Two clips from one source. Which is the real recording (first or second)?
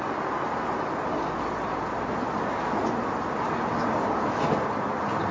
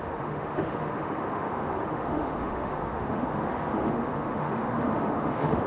first